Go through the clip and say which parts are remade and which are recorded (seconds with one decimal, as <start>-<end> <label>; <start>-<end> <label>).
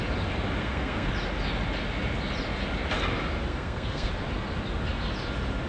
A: 0.0-0.6 recorded; 0.6-1.1 remade; 1.1-3.5 recorded; 3.5-4.1 remade; 4.1-5.7 recorded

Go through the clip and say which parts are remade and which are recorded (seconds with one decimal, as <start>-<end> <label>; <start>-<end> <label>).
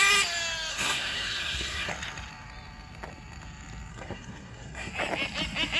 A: 0.0-0.7 recorded; 0.7-1.9 remade; 1.9-3.9 recorded; 3.9-4.9 remade; 4.9-5.8 recorded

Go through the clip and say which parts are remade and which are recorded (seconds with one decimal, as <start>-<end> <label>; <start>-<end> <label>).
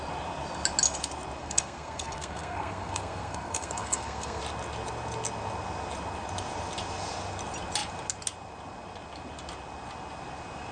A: 0.0-1.4 recorded; 1.4-4.4 remade; 4.4-10.7 recorded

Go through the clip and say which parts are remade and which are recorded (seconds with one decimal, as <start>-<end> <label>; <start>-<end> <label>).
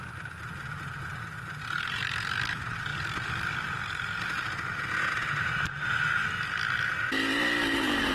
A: 0.0-8.1 recorded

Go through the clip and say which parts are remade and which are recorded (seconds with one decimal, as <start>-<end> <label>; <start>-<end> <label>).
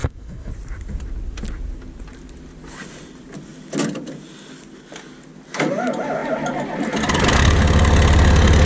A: 0.0-0.5 remade; 0.5-8.7 recorded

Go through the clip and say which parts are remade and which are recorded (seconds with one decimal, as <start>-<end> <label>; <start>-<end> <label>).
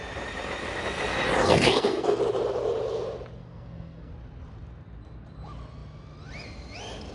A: 0.0-1.4 recorded; 1.4-2.2 remade; 2.2-3.4 recorded; 3.4-4.1 remade; 4.1-7.1 recorded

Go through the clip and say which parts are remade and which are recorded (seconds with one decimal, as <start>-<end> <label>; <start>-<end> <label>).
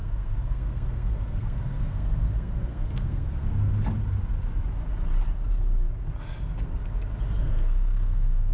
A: 0.0-3.7 remade; 3.7-7.4 recorded; 7.4-8.5 remade